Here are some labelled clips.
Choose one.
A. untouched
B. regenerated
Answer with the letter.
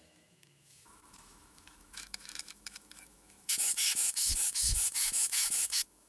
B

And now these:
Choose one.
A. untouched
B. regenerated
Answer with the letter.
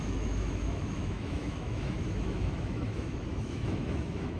B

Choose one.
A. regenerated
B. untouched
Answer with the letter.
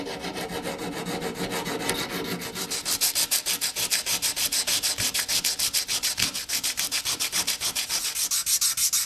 B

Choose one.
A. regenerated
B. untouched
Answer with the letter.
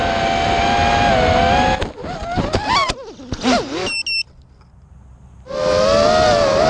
B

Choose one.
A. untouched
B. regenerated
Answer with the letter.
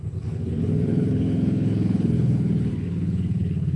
B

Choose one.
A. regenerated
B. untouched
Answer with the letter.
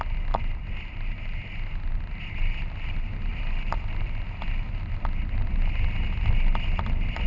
B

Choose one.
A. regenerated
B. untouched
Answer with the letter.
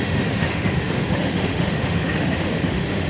A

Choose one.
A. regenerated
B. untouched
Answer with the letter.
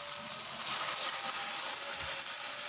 B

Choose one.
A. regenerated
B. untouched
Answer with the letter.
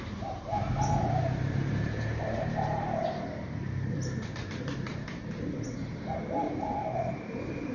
A